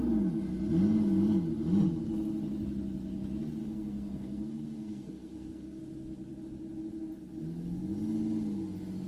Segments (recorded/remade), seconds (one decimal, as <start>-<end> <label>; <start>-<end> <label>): 0.0-3.6 recorded; 3.6-5.8 remade; 5.8-9.1 recorded